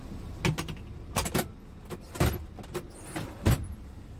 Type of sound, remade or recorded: recorded